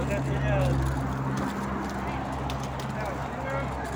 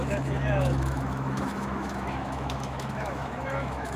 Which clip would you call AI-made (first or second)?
second